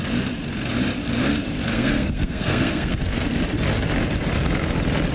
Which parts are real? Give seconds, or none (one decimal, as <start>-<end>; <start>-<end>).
0.0-1.7; 3.0-5.1